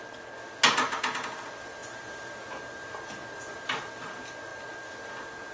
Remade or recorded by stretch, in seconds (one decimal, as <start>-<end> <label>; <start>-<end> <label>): 0.0-5.5 recorded